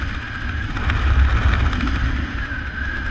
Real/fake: real